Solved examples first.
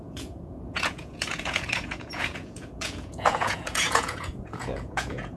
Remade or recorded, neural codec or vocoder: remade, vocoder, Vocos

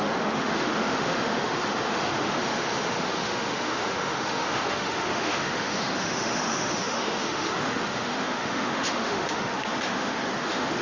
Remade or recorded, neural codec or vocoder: remade, autoencoder, DAC-VAE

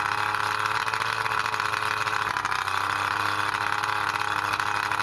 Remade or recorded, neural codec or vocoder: recorded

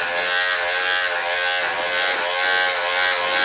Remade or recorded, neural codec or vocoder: recorded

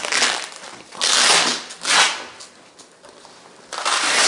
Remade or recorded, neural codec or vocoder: recorded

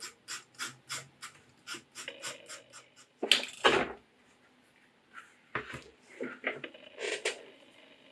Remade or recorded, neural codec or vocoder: recorded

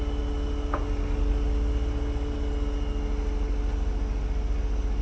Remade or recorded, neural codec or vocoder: recorded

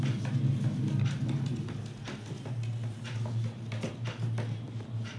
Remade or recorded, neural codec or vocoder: recorded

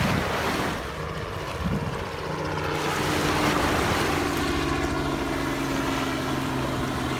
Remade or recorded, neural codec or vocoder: recorded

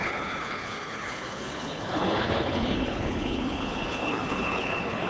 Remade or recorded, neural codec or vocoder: remade, codec, HILCodec